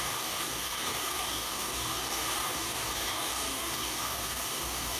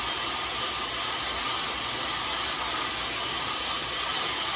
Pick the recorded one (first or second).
second